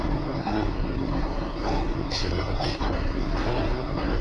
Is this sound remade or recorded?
remade